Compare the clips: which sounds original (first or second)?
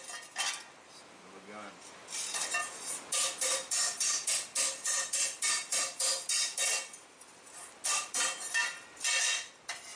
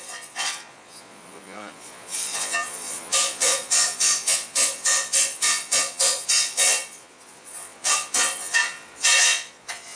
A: first